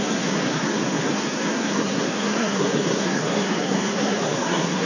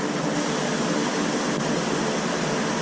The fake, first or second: first